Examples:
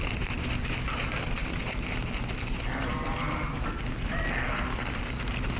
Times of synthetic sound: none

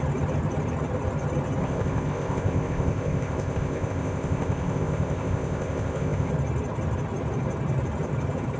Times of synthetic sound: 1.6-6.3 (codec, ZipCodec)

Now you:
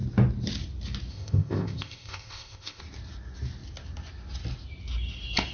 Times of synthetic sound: 1.1-2.8 (codec, ZipCodec)

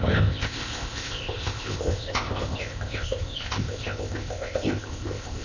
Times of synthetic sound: 0.0-5.4 (codec, ZipCodec)

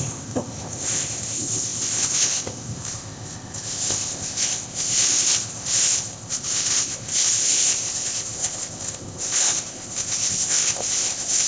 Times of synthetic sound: 0.0-11.5 (codec, ZipCodec)